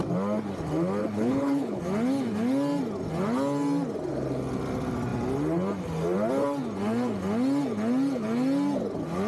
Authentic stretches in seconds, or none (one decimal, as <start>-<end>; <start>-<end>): 0.0-1.0; 1.8-9.3